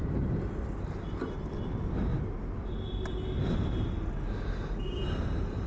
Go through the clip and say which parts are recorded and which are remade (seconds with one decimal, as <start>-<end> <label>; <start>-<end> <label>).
0.0-5.7 recorded